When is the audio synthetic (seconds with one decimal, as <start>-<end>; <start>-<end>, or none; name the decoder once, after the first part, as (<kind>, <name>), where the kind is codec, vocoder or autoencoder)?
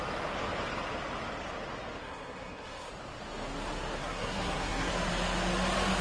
2.0-2.9 (codec, SNAC); 4.0-4.9